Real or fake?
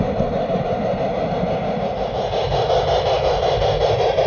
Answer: real